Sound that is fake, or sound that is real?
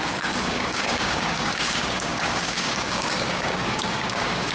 fake